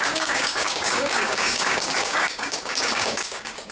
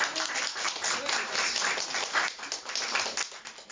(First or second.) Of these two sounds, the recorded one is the second